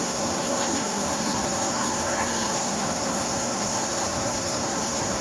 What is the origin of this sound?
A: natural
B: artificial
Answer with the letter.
B